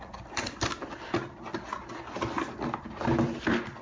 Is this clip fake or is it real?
real